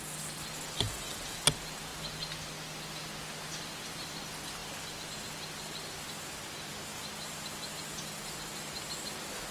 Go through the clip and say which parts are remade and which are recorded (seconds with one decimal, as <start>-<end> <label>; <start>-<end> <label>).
0.0-9.5 recorded